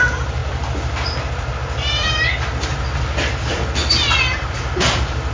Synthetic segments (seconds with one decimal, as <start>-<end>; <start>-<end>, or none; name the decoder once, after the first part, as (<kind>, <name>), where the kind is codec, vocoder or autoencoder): 0.0-0.4 (vocoder, BigVGAN v2); 3.4-5.3